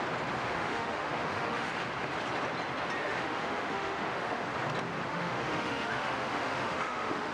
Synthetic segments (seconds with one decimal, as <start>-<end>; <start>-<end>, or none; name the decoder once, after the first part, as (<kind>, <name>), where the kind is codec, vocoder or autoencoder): 0.4-1.7 (autoencoder, DAC-VAE); 3.0-4.4; 5.1-7.3